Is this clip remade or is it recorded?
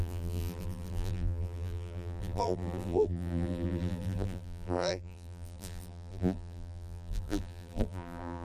remade